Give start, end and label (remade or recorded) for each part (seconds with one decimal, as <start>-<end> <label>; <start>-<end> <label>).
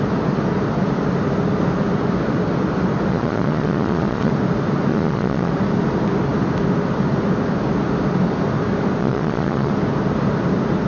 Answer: 0.0-3.1 recorded; 3.1-4.3 remade; 4.3-4.9 recorded; 4.9-5.5 remade; 5.5-9.0 recorded; 9.0-9.7 remade; 9.7-10.9 recorded